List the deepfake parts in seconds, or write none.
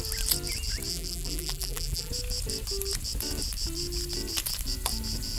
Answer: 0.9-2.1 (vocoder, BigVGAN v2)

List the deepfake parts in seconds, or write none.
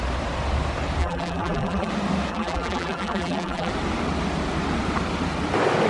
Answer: 1.0-1.9 (vocoder, BigVGAN v2); 2.3-3.7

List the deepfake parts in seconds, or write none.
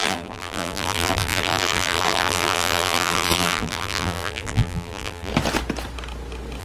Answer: 0.0-5.3 (vocoder, BigVGAN v2)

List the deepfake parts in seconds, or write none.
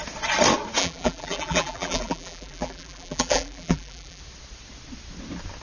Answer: 0.8-4.2 (vocoder, BigVGAN v2)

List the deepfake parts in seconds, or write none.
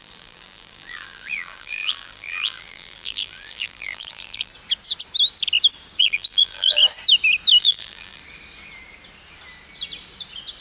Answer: 0.0-4.5 (vocoder, BigVGAN v2); 6.0-6.8; 7.6-8.2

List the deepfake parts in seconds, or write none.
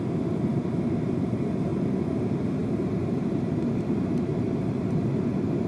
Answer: 0.0-5.7 (vocoder, BigVGAN v2)